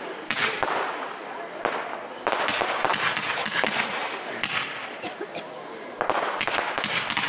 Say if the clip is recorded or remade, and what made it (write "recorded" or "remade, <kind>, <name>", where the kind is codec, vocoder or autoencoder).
recorded